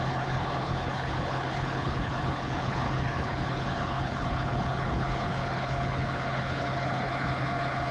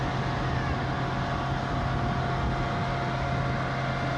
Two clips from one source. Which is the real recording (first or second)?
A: second